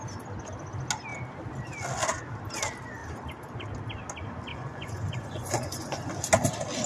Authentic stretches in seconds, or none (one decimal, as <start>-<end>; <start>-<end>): 0.0-4.5; 6.1-6.9